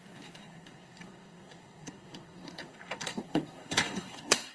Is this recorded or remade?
remade